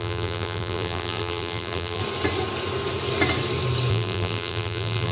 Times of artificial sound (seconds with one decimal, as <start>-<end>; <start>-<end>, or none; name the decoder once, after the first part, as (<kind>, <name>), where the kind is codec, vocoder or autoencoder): 0.0-2.0 (vocoder, BigVGAN v2); 3.9-5.1